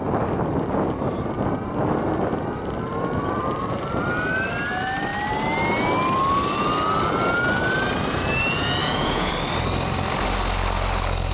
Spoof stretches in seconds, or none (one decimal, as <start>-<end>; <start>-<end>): 8.8-9.3